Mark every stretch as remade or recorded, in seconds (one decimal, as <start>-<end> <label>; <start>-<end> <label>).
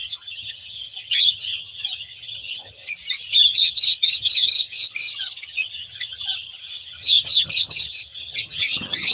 0.0-2.8 remade; 2.8-3.3 recorded; 3.3-9.1 remade